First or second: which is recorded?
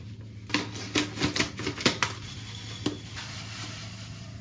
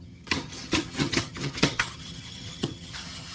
first